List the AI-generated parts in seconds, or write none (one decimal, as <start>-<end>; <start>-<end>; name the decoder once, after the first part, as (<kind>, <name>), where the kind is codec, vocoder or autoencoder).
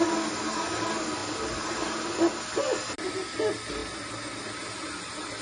3.8-4.4 (vocoder, BigVGAN v2)